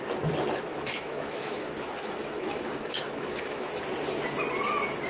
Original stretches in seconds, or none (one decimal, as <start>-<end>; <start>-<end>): 0.0-0.7; 3.8-5.1